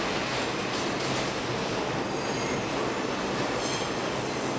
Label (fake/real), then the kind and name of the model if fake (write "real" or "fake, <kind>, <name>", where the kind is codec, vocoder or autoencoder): real